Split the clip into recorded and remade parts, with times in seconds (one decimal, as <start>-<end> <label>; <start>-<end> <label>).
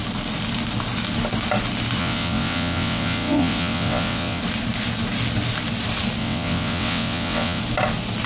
0.0-2.0 recorded; 2.0-4.4 remade; 4.4-6.2 recorded; 6.2-7.6 remade; 7.6-8.3 recorded